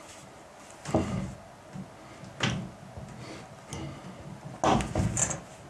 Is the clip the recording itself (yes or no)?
yes